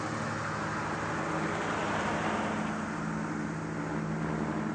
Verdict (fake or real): real